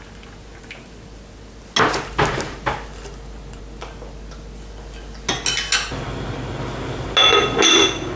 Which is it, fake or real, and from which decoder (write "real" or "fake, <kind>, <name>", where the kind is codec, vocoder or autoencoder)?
real